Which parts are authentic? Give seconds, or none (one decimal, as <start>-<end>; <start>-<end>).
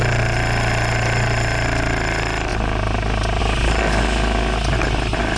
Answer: 0.0-5.4